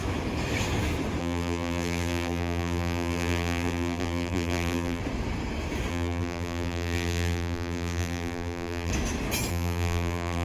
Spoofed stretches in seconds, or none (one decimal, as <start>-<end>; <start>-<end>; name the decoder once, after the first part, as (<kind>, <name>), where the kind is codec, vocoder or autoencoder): 1.2-5.0 (vocoder, BigVGAN v2); 5.9-8.9; 9.5-10.4

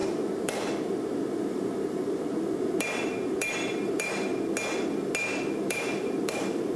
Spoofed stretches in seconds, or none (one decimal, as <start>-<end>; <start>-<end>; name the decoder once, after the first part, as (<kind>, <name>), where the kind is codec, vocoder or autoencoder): 0.0-4.3 (vocoder, BigVGAN v2); 5.5-6.8

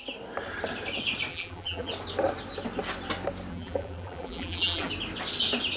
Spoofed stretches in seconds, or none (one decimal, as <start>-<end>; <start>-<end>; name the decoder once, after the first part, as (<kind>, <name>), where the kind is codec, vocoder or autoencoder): 1.3-1.9 (vocoder, BigVGAN v2); 3.5-4.9

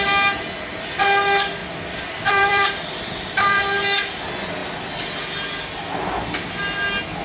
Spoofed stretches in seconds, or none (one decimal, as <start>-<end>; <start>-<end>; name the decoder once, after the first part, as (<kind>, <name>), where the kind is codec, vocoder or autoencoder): 1.6-3.6 (vocoder, BigVGAN v2)

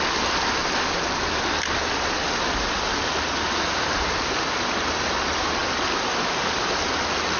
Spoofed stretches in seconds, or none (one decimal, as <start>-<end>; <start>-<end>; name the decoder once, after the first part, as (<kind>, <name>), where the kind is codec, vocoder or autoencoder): none

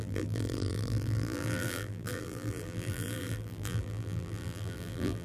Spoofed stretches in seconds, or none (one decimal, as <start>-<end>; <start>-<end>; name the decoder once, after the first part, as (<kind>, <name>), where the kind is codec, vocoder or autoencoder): 0.0-5.2 (vocoder, BigVGAN v2)